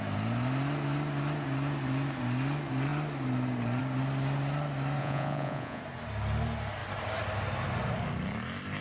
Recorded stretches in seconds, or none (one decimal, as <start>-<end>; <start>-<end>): 0.0-5.0; 5.8-8.8